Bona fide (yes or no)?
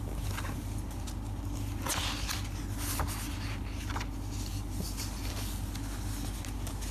yes